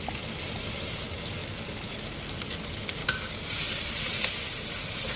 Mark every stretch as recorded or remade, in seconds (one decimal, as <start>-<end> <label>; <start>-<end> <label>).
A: 0.0-3.0 recorded; 3.0-3.6 remade; 3.6-5.2 recorded

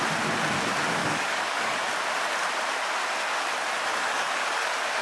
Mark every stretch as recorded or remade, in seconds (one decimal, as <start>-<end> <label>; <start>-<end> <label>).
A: 0.0-1.0 recorded; 1.0-1.8 remade; 1.8-3.9 recorded; 3.9-5.0 remade

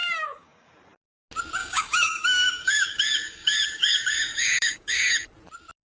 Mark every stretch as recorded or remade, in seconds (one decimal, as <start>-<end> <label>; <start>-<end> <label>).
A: 0.0-0.7 remade; 0.7-1.6 recorded; 1.6-5.1 remade; 5.1-6.0 recorded